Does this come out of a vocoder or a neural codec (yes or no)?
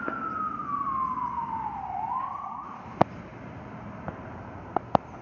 no